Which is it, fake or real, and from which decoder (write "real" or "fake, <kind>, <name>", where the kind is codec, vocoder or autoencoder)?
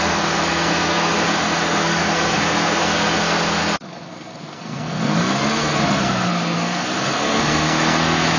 fake, codec, SNAC